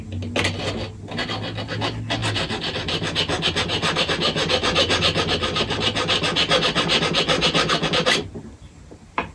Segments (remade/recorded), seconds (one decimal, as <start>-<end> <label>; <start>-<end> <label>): 0.0-9.3 recorded